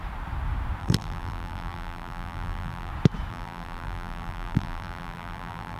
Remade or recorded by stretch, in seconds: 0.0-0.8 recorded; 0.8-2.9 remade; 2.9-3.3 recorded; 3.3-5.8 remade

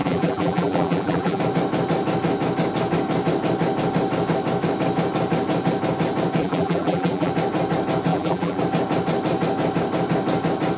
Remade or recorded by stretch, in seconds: 0.0-1.4 remade; 1.4-6.4 recorded; 6.4-7.3 remade; 7.3-8.1 recorded; 8.1-8.6 remade; 8.6-10.8 recorded